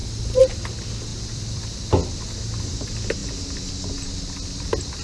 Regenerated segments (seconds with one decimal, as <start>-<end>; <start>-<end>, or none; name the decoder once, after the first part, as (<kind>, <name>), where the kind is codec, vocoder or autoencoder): 0.0-0.6 (vocoder, BigVGAN v2); 1.1-1.9